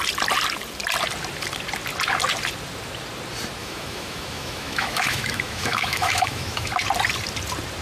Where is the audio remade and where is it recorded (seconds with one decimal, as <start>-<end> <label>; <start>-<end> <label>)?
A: 0.0-3.6 recorded; 3.6-6.7 remade; 6.7-7.8 recorded